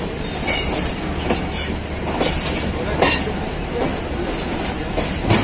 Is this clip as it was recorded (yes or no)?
yes